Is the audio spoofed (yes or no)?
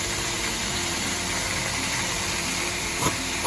yes